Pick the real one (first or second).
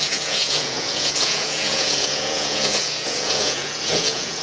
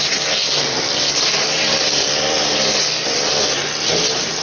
second